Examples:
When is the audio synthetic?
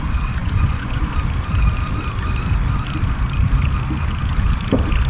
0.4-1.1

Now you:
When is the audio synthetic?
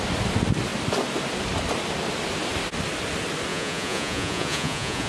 3.5-5.1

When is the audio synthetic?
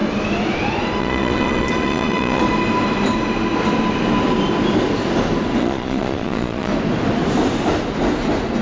1.0-2.4; 5.6-6.7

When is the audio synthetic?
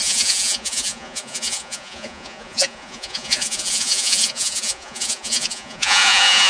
0.0-6.5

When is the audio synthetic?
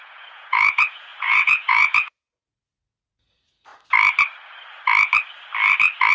0.0-3.7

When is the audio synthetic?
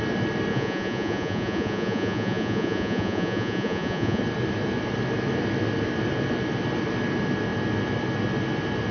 0.5-4.2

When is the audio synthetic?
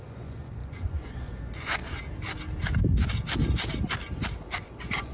0.0-1.8; 4.5-5.1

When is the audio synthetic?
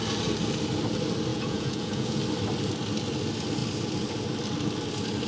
1.3-2.2